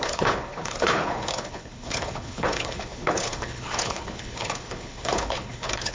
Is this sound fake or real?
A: fake